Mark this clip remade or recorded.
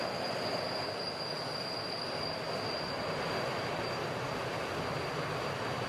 recorded